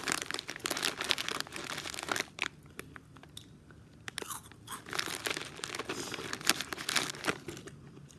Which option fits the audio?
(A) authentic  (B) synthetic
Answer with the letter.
A